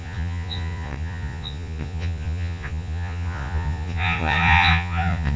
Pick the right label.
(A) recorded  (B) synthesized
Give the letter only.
B